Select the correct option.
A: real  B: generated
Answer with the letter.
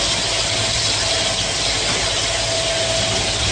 A